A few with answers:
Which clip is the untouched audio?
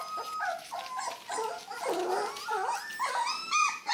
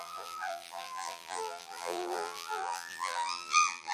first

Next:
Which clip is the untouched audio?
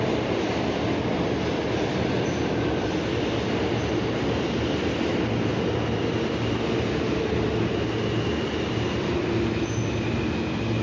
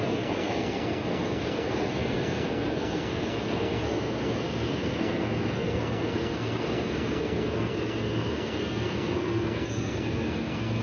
first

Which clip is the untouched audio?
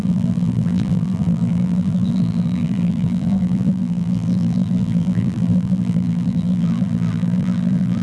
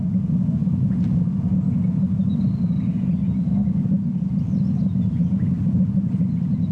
second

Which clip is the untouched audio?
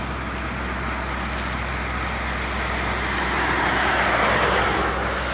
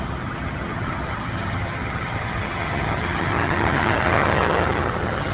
first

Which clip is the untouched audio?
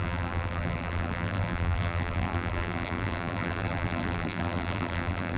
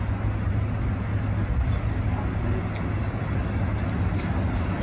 second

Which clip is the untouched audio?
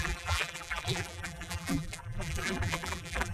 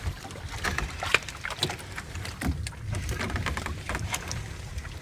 second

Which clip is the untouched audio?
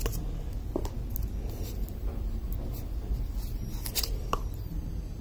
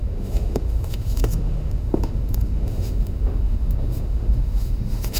first